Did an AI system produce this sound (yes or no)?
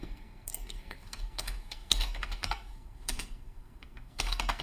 yes